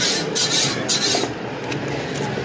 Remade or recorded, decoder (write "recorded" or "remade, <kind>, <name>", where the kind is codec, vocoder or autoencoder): recorded